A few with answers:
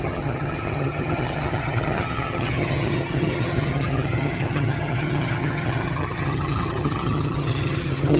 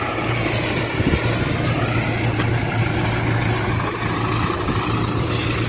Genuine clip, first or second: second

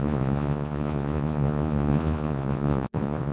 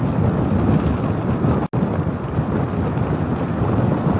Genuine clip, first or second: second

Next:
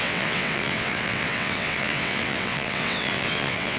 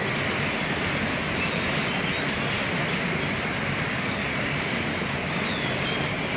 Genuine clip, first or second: second